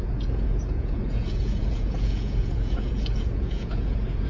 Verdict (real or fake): fake